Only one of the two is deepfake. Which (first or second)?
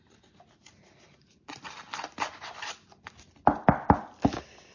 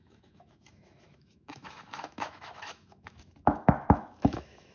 second